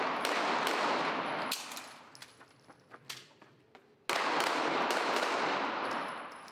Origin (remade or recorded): recorded